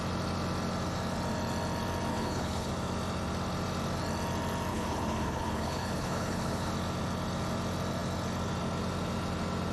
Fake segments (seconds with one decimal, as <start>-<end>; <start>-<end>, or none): 2.1-2.7; 4.7-6.7